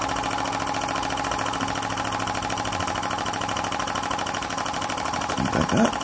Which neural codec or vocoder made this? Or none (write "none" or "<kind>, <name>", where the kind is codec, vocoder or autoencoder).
none